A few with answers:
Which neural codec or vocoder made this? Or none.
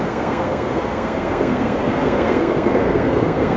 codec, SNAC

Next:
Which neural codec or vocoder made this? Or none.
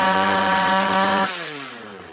vocoder, WaveNeXt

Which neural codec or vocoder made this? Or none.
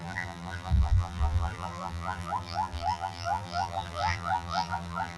vocoder, BigVGAN v2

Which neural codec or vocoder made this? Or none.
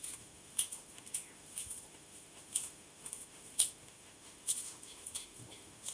autoencoder, DAC-VAE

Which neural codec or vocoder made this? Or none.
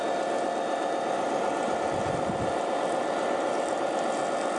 none